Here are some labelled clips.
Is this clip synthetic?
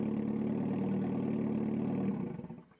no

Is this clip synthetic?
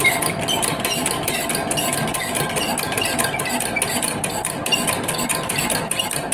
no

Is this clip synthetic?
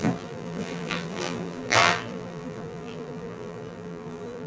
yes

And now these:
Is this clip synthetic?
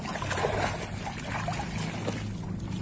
no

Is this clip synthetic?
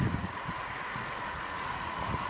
yes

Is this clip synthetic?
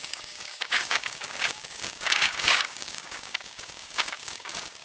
yes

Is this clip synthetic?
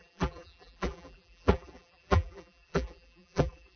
yes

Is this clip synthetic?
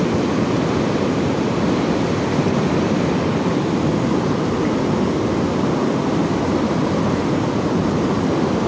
no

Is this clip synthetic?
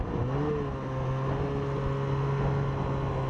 no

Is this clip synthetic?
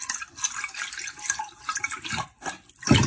no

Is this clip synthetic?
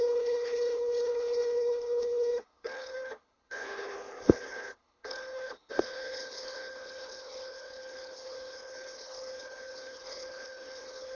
yes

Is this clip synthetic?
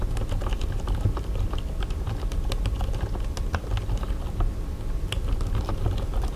no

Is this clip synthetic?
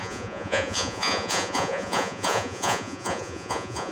yes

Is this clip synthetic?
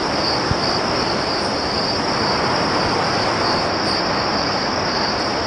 no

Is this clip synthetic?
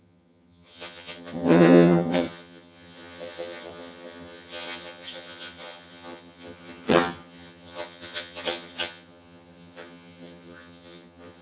yes